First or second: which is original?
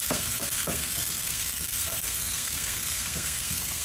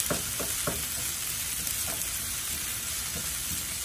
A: second